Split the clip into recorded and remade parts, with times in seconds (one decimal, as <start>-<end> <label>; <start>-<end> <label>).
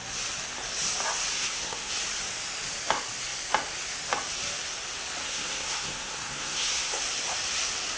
0.0-1.3 recorded; 1.3-1.9 remade; 1.9-5.2 recorded; 5.2-7.0 remade; 7.0-8.0 recorded